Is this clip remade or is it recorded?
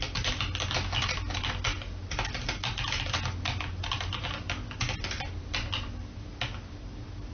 recorded